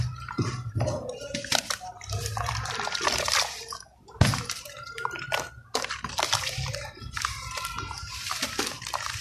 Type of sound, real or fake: fake